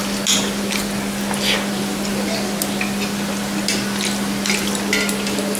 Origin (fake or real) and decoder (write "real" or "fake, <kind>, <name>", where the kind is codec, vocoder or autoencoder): real